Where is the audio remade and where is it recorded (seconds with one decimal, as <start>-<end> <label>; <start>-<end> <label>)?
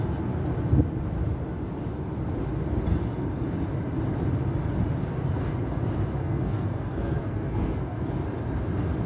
0.0-6.2 recorded; 6.2-8.1 remade; 8.1-9.1 recorded